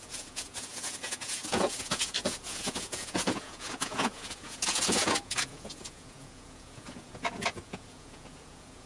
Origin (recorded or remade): remade